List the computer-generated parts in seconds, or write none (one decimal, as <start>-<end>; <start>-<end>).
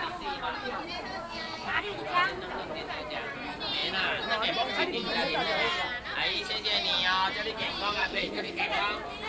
1.2-2.0; 8.0-8.7